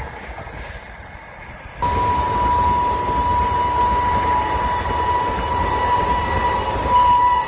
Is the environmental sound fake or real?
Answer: real